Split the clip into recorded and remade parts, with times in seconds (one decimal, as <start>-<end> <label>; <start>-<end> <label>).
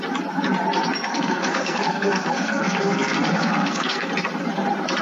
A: 0.0-1.1 recorded; 1.1-4.1 remade; 4.1-5.0 recorded